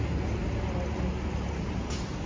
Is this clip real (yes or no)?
yes